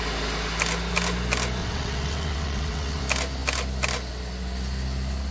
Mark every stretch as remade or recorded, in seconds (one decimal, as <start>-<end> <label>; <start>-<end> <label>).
0.0-1.6 recorded; 1.6-3.0 remade; 3.0-5.3 recorded